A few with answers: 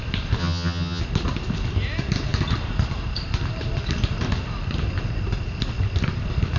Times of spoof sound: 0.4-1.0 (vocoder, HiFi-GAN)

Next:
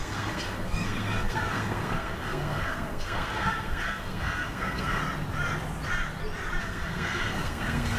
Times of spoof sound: 0.0-5.0 (codec, SNAC); 6.6-8.0

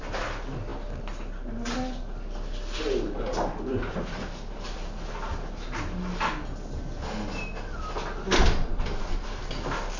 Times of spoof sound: none

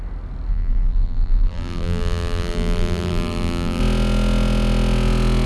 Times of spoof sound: 0.5-3.8 (vocoder, BigVGAN v2)

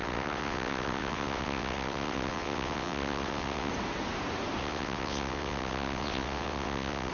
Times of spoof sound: 0.0-3.7 (vocoder, WaveNeXt); 4.6-7.1